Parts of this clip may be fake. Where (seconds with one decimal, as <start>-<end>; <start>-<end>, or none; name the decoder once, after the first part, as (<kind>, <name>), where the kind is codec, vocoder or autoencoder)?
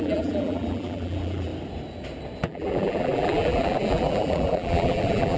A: 0.0-1.5 (vocoder, BigVGAN v2); 2.4-5.4